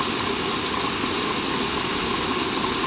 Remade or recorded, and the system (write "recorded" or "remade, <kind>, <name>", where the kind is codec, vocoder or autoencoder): recorded